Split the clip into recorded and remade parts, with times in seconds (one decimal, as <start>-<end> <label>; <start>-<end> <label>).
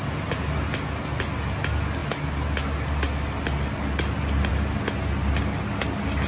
0.0-6.3 recorded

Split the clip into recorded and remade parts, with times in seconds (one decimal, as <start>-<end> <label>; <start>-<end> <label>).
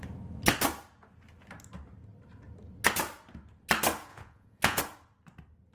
0.0-4.1 recorded; 4.1-4.8 remade; 4.8-5.7 recorded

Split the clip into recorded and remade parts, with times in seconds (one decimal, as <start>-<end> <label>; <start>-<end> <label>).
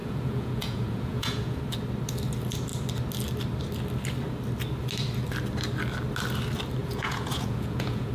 0.0-1.6 remade; 1.6-6.8 recorded; 6.8-8.1 remade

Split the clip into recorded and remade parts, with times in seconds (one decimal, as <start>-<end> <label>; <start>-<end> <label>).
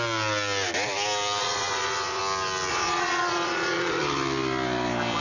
0.0-1.4 recorded; 1.4-2.2 remade; 2.2-2.7 recorded; 2.7-4.0 remade; 4.0-5.2 recorded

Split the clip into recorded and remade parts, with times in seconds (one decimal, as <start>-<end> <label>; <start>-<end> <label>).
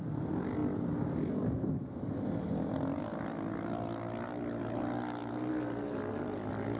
0.0-6.8 recorded